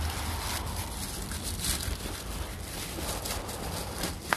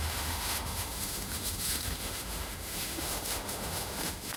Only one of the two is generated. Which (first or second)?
second